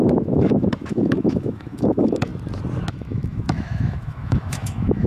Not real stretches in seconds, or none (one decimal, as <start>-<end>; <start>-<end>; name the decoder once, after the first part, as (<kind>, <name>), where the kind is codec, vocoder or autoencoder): 0.0-2.3 (autoencoder, DAC-VAE); 2.9-5.1